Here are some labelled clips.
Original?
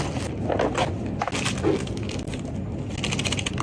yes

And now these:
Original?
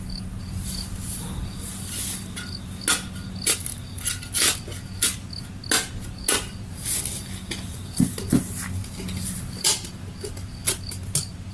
yes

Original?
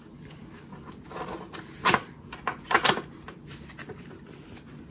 yes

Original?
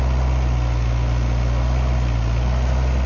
yes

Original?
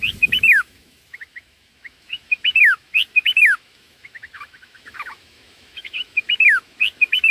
no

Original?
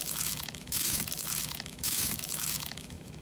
no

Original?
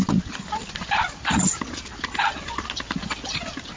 yes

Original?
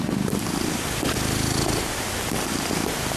yes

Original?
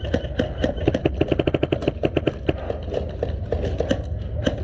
yes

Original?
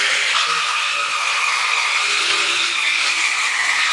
yes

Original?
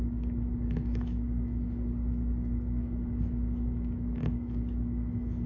no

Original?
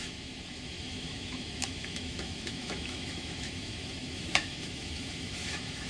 no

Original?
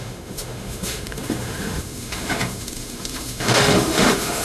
no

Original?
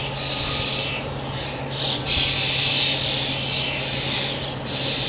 yes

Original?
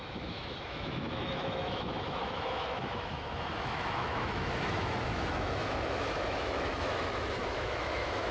no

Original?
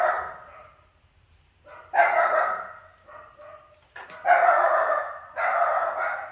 yes